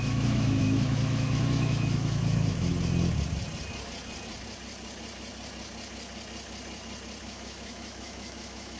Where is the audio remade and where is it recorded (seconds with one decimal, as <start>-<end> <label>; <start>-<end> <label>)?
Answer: 0.0-2.7 remade; 2.7-7.2 recorded; 7.2-8.8 remade